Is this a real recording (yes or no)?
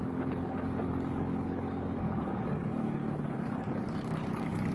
no